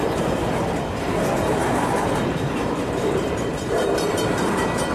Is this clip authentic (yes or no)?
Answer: no